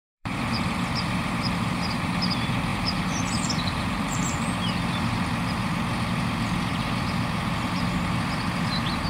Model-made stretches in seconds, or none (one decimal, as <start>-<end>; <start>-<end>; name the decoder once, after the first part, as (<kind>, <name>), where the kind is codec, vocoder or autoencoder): 0.0-2.1 (vocoder, BigVGAN v2); 2.7-4.5